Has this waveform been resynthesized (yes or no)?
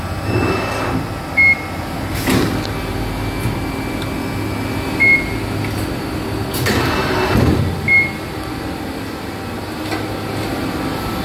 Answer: no